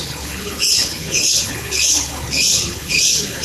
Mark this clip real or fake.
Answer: fake